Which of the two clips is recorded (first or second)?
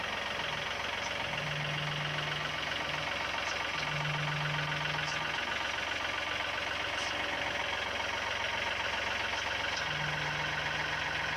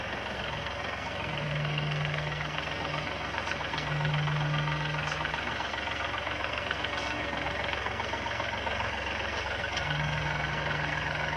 first